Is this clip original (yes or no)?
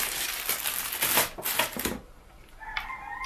yes